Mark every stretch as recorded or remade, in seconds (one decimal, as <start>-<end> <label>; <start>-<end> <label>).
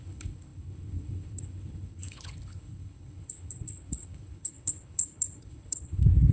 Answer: 0.0-6.3 remade